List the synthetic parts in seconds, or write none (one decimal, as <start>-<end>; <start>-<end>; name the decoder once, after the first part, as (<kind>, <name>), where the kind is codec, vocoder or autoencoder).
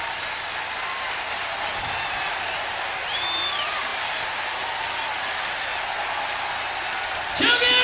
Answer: 3.9-5.7 (vocoder, BigVGAN v2)